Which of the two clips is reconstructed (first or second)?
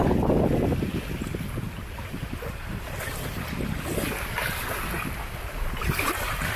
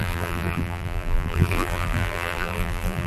second